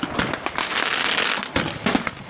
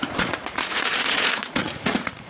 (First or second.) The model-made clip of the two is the second